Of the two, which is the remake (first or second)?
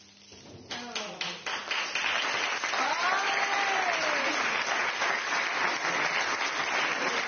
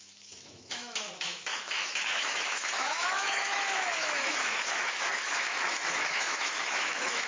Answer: second